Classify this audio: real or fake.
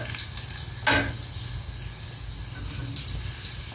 real